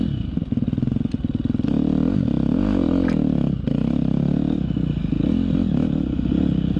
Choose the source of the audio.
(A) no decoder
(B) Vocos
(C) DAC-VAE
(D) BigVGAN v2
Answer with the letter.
A